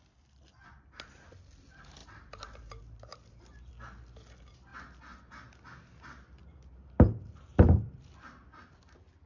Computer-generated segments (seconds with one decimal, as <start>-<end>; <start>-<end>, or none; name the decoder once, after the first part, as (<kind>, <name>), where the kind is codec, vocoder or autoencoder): 2.0-3.7 (vocoder, BigVGAN v2); 6.4-7.6